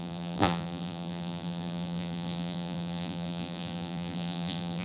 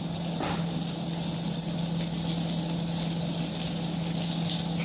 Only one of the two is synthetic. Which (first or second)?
first